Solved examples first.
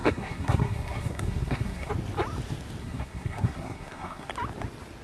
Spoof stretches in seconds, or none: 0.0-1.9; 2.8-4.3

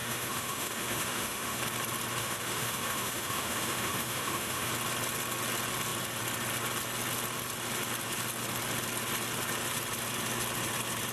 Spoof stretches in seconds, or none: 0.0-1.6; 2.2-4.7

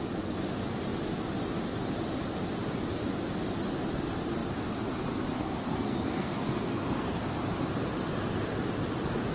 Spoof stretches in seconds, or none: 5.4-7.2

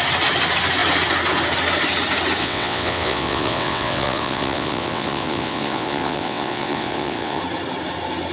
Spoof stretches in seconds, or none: 2.4-7.4

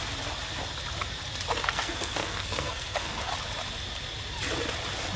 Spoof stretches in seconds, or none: 1.6-3.3

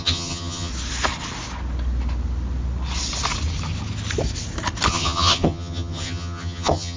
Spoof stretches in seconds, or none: 0.0-0.7; 4.9-7.0

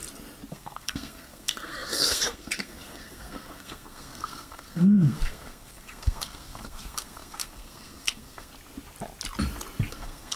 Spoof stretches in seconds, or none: 0.5-8.5; 9.9-10.4

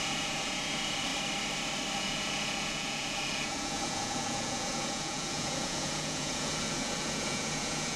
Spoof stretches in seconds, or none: 0.0-1.1; 2.0-8.0